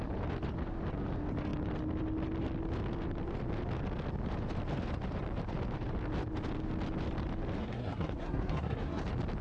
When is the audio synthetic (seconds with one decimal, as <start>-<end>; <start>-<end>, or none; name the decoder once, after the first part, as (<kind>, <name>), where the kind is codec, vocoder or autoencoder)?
7.6-9.0 (codec, SNAC)